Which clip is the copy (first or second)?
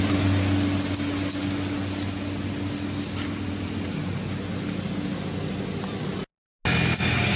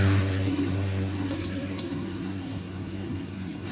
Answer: second